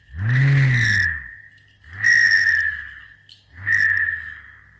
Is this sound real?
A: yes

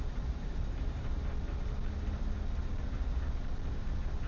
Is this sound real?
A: yes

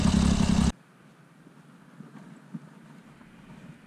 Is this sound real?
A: yes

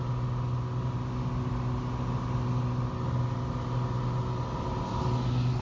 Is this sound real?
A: yes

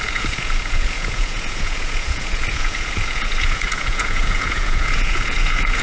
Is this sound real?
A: no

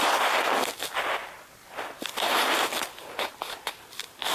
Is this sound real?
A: yes